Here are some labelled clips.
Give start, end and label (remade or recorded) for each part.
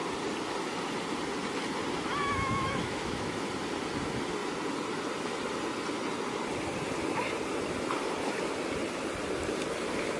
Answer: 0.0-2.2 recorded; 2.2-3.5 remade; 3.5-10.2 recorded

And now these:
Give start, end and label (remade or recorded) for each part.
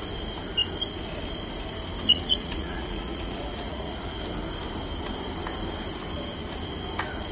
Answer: 0.0-2.1 recorded; 2.1-4.2 remade; 4.2-7.3 recorded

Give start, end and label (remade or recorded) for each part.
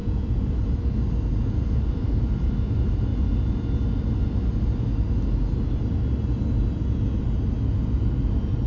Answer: 0.0-0.6 remade; 0.6-8.7 recorded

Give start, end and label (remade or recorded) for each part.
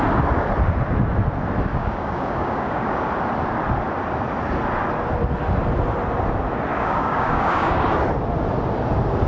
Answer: 0.0-1.7 recorded; 1.7-3.1 remade; 3.1-6.7 recorded; 6.7-7.8 remade; 7.8-9.3 recorded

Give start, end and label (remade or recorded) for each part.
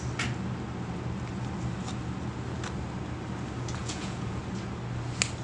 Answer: 0.0-3.8 recorded; 3.8-4.4 remade; 4.4-5.4 recorded